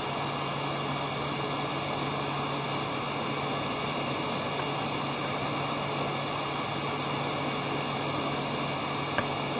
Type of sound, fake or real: real